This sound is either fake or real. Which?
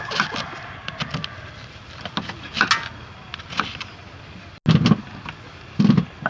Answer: real